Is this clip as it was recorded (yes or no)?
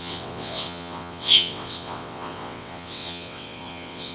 no